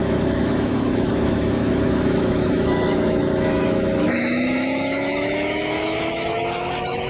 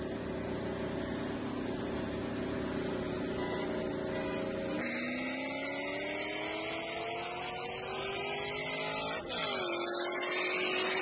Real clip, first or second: second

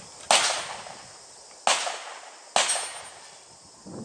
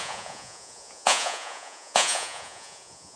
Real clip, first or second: first